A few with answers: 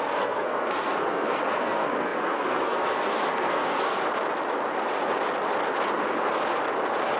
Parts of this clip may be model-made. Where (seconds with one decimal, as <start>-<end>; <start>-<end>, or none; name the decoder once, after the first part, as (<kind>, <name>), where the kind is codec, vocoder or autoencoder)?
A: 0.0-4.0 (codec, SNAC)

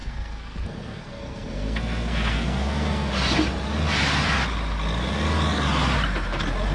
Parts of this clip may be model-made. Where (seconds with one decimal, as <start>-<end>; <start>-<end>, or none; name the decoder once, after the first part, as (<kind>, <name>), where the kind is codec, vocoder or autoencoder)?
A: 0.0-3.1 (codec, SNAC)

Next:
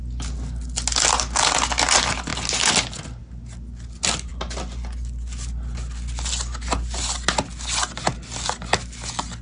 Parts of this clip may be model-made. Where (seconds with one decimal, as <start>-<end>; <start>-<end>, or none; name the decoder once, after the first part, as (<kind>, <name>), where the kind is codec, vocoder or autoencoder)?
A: none